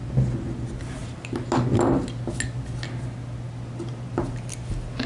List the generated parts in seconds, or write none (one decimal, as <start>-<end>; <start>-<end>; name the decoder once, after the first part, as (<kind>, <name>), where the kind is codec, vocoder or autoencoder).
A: none